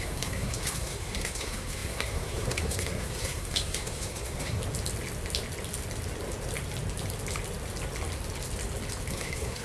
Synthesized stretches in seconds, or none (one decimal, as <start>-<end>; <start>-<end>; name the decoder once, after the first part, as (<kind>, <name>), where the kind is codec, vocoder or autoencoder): 0.0-4.6 (codec, SNAC); 9.1-9.6

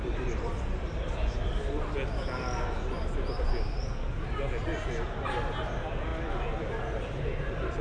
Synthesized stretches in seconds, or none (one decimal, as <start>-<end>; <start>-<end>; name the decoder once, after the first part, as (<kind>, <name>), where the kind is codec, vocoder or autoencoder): none

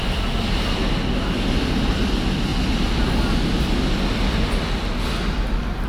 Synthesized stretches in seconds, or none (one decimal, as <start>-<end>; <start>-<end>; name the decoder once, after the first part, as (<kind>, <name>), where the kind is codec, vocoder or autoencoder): none

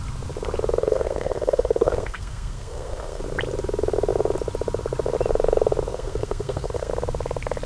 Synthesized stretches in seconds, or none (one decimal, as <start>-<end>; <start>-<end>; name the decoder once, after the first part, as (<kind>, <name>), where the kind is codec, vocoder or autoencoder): 0.8-3.2 (codec, SNAC); 5.9-6.9

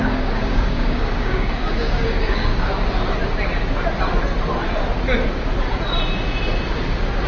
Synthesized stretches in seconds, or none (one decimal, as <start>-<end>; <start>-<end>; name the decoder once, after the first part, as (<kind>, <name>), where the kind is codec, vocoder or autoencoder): 0.0-2.5 (codec, DAC)